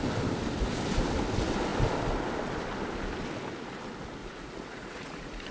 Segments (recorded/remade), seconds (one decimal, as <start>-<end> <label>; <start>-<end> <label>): 0.0-4.2 recorded; 4.2-5.5 remade